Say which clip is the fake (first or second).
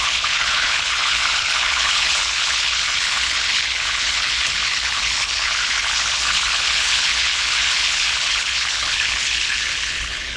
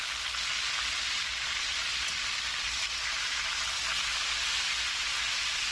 first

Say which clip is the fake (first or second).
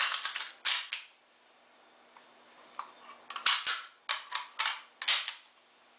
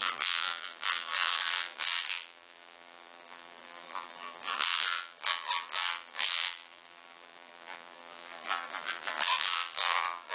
second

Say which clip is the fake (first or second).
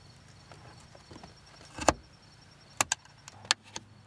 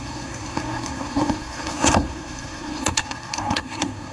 second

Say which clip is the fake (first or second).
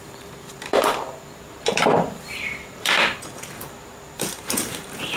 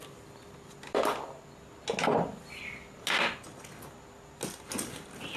first